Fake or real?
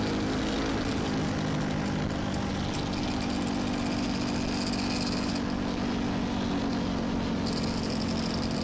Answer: real